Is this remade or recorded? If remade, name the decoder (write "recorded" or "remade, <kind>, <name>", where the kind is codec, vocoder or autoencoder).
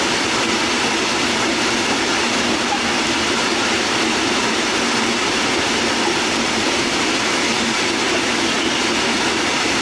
remade, vocoder, BigVGAN v2